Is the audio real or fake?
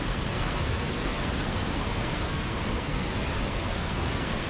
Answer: fake